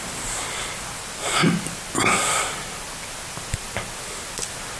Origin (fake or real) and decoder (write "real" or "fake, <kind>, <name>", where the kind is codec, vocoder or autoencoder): real